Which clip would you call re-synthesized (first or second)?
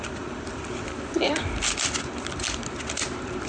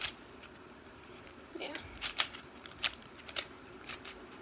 second